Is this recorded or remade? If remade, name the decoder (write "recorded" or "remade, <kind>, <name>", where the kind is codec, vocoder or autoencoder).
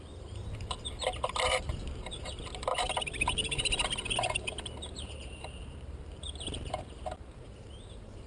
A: remade, vocoder, BigVGAN v2